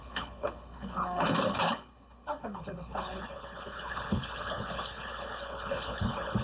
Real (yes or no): no